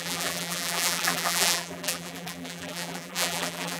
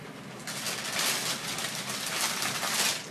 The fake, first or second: first